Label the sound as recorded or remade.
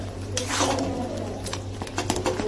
recorded